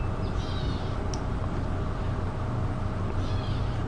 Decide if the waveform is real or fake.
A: real